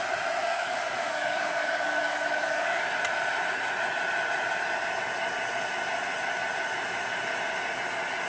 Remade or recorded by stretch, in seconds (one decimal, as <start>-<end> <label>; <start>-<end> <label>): 0.0-0.4 recorded; 0.4-2.8 remade; 2.8-8.3 recorded